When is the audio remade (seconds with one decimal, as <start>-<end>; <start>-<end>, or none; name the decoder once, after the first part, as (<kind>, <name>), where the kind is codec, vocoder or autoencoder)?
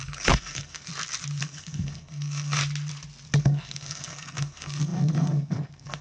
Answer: 0.0-0.9 (codec, SNAC); 1.4-2.6; 3.4-6.0